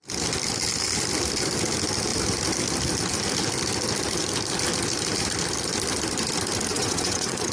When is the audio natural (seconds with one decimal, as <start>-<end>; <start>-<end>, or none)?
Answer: 0.0-6.7